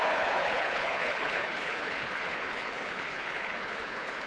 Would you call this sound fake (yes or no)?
yes